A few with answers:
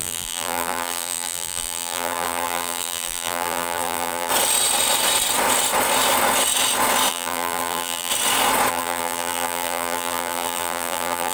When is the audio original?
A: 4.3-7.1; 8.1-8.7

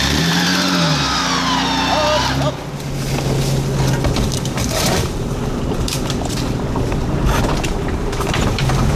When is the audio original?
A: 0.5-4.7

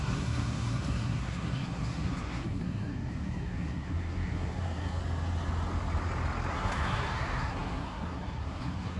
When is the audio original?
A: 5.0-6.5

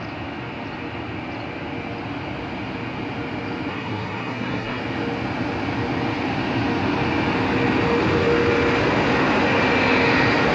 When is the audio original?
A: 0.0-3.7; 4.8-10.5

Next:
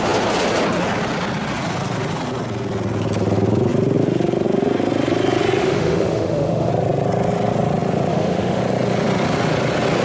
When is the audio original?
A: 0.0-5.6; 6.7-8.1; 8.6-10.0

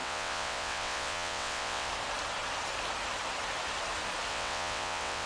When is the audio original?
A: 1.9-4.3